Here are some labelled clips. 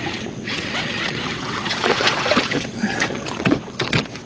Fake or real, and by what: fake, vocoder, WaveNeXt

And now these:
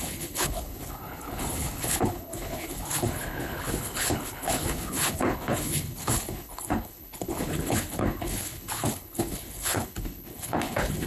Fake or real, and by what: fake, codec, HILCodec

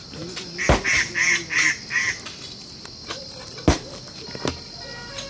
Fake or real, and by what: real